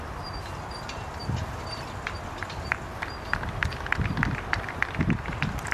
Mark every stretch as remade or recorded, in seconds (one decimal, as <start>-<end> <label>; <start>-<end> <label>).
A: 0.0-5.7 recorded